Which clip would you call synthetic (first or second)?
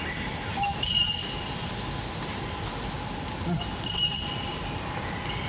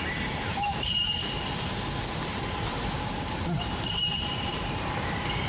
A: second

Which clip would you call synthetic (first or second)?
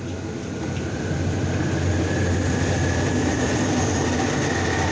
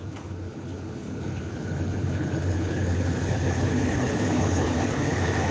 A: second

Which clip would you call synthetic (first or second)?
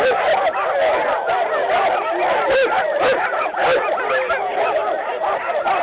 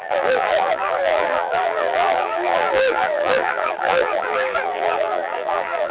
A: second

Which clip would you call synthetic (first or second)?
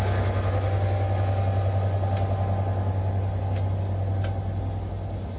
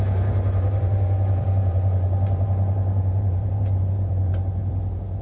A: second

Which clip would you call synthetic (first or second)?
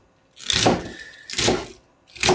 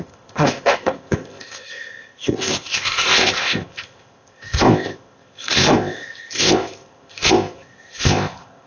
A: second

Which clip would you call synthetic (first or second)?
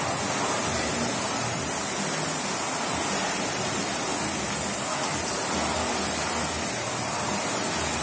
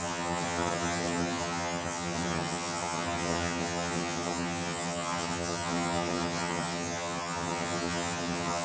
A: second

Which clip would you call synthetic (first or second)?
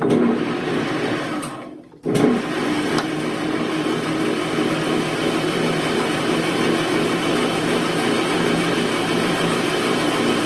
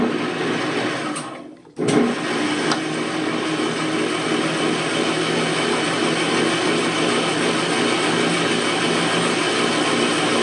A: first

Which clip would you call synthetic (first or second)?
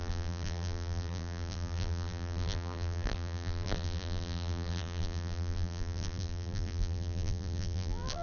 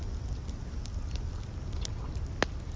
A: first